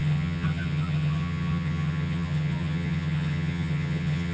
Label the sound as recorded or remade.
remade